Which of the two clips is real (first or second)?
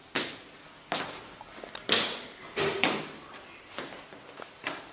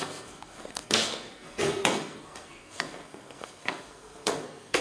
first